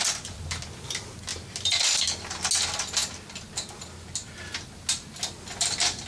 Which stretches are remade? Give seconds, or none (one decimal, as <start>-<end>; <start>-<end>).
none